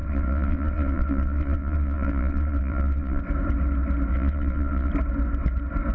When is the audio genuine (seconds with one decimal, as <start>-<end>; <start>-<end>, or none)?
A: 3.2-4.1; 4.9-5.9

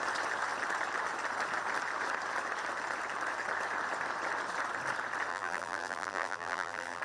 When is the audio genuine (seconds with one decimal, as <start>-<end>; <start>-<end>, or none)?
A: 0.0-5.3

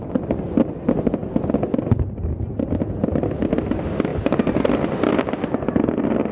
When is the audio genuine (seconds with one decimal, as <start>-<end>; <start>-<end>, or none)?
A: 0.0-6.3

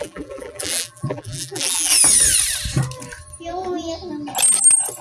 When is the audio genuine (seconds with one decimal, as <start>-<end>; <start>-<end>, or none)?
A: 1.9-5.0

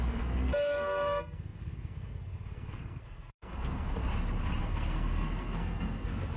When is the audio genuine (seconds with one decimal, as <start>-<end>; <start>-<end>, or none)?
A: 4.0-4.6

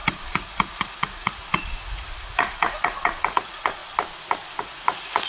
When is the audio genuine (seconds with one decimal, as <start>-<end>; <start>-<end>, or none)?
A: 3.8-4.6

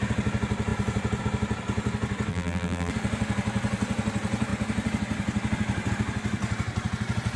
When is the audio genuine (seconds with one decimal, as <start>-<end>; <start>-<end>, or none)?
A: 0.0-2.3; 2.9-7.4

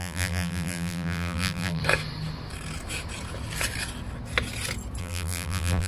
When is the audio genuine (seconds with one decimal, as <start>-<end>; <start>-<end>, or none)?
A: 1.8-5.0